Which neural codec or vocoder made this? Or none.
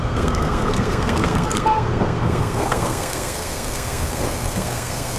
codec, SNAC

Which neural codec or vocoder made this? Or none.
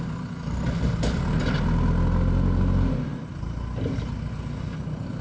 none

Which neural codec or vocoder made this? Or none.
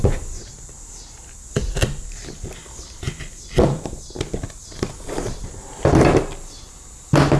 none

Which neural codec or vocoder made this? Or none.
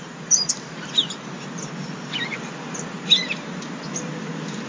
none